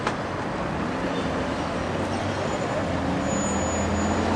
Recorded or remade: recorded